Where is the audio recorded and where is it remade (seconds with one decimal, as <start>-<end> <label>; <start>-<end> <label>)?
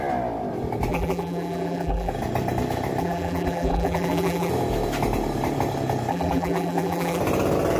0.0-0.9 recorded; 0.9-2.1 remade; 2.1-3.0 recorded; 3.0-4.5 remade; 4.5-6.1 recorded; 6.1-7.2 remade; 7.2-7.8 recorded